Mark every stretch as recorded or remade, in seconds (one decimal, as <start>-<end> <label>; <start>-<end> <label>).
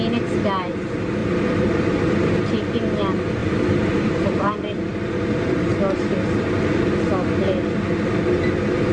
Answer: 0.0-1.2 recorded; 1.2-2.3 remade; 2.3-3.4 recorded; 3.4-6.9 remade; 6.9-8.9 recorded